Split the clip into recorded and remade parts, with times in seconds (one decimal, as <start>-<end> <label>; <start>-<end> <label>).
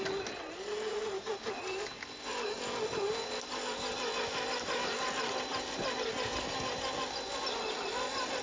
0.0-0.9 recorded; 0.9-1.6 remade; 1.6-8.4 recorded